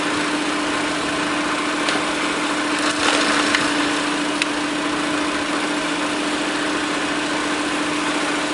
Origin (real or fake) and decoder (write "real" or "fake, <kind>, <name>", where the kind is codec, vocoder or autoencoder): real